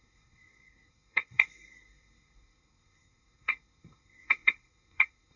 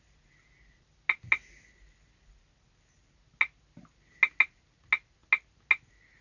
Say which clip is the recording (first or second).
second